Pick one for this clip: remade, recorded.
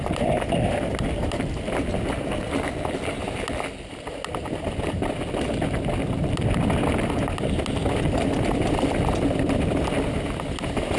recorded